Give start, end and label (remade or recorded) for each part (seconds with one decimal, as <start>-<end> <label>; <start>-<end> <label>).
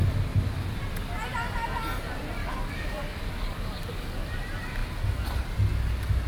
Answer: 0.0-2.4 recorded; 2.4-4.2 remade; 4.2-6.3 recorded